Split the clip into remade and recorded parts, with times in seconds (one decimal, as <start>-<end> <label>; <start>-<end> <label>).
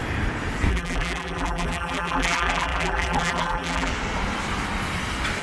0.0-0.7 recorded; 0.7-3.9 remade; 3.9-5.4 recorded